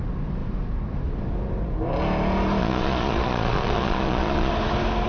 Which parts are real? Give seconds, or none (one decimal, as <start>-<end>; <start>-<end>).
0.0-2.6; 4.5-5.1